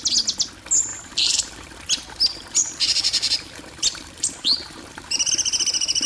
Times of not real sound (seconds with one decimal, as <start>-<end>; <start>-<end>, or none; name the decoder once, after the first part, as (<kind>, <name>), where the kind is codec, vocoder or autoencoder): 0.9-1.8 (vocoder, BigVGAN v2); 2.6-5.3